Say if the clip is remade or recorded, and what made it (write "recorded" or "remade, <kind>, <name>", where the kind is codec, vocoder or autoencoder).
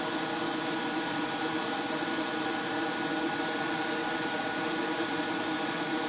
recorded